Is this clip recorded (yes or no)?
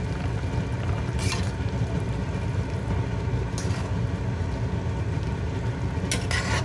yes